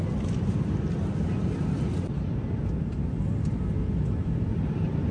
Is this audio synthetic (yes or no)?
no